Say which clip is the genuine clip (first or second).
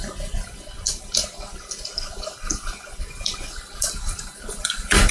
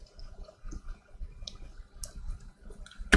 second